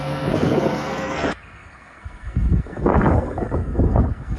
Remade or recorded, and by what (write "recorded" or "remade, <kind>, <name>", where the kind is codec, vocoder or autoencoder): remade, codec, SNAC